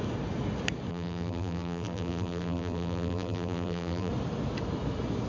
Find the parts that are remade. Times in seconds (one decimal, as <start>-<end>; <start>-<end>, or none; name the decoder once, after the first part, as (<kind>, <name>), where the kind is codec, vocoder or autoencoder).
0.9-4.1 (vocoder, BigVGAN v2)